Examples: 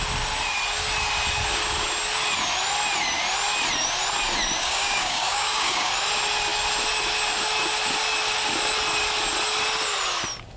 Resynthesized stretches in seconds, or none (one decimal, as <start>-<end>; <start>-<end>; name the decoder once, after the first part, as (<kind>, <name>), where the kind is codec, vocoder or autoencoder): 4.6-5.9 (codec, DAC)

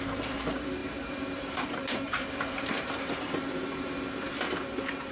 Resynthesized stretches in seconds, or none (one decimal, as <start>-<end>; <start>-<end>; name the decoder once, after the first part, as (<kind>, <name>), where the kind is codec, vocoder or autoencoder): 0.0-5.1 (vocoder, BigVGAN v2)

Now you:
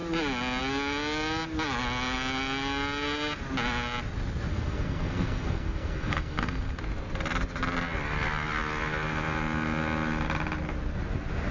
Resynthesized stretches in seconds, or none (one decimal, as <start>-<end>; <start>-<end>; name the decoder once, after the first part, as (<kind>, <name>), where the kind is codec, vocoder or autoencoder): 4.5-6.8 (codec, SNAC)

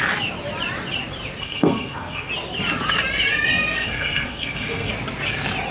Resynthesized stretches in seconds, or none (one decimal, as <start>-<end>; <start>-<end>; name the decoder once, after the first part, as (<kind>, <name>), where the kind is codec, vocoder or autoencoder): 1.4-2.3 (codec, SNAC); 3.7-4.9

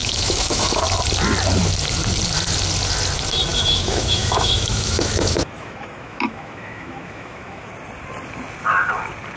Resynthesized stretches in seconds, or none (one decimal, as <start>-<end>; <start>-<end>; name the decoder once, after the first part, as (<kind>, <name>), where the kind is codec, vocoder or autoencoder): 0.0-0.8 (autoencoder, DAC-VAE); 3.5-7.7

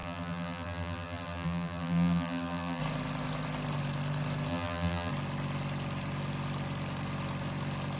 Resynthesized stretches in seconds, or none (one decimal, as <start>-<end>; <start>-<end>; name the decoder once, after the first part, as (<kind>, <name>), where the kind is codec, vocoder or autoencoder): 0.0-2.8 (vocoder, BigVGAN v2); 4.5-5.1